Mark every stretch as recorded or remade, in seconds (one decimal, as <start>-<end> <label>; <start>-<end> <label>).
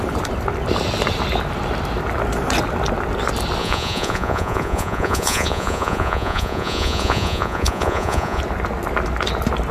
0.0-3.6 recorded; 3.6-8.4 remade; 8.4-9.7 recorded